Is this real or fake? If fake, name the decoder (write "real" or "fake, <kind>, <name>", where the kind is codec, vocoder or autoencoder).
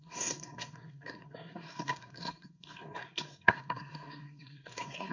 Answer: fake, codec, SNAC